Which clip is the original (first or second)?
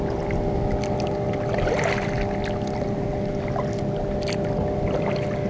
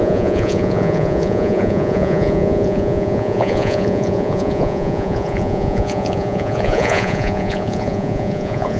first